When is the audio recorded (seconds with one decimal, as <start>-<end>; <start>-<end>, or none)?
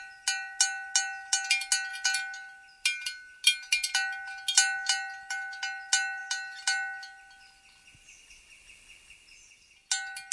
0.0-10.3